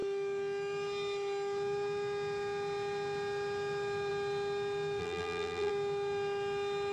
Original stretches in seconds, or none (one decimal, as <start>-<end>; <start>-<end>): 0.0-5.0; 5.7-6.9